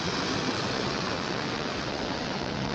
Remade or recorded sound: remade